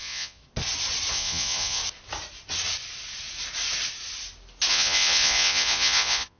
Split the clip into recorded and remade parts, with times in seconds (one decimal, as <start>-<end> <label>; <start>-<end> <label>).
0.0-0.4 remade; 0.4-1.1 recorded; 1.1-1.8 remade; 1.8-4.7 recorded; 4.7-6.4 remade